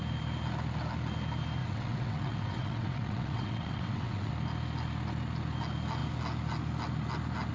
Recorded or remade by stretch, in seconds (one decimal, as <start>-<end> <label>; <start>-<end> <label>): 0.0-1.6 recorded; 1.6-4.3 remade; 4.3-7.5 recorded